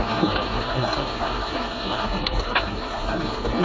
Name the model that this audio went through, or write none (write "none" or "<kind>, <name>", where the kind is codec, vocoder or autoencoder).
codec, SNAC